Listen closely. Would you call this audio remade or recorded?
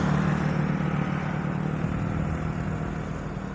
recorded